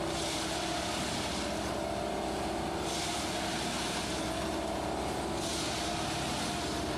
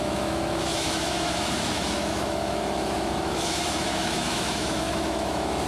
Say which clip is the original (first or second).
first